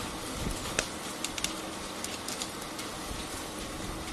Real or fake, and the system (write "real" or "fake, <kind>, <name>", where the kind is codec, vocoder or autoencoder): real